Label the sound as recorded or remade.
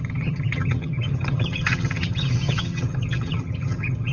remade